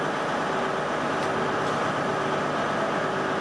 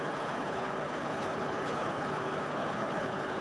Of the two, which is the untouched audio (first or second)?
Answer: first